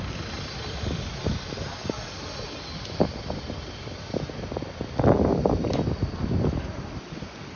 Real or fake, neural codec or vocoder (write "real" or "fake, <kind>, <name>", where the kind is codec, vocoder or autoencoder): real